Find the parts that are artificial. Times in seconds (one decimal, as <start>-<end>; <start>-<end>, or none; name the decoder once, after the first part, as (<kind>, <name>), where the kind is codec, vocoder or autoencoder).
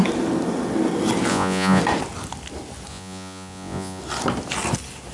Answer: 1.3-1.8 (vocoder, Vocos); 2.9-4.0